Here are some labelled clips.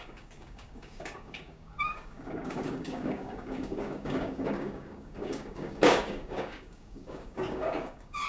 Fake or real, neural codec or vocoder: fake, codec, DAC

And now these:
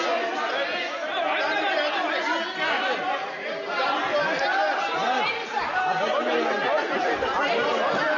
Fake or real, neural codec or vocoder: real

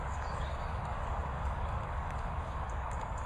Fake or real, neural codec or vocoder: fake, codec, DAC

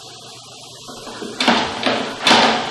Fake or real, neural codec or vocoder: real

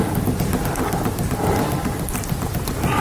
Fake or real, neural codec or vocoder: real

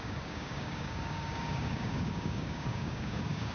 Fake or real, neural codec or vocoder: fake, codec, DAC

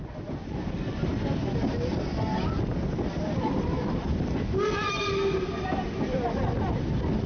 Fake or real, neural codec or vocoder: real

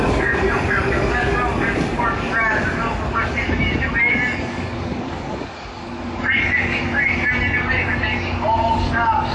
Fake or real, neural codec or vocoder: fake, codec, DAC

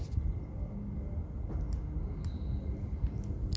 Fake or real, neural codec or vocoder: real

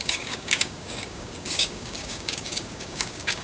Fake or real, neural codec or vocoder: fake, codec, DAC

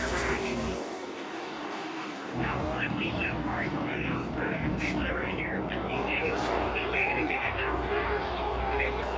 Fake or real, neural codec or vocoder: fake, codec, DAC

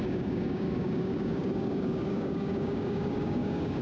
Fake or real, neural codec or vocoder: fake, codec, DAC